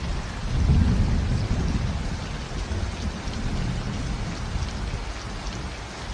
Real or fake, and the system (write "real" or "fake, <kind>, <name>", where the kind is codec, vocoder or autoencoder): real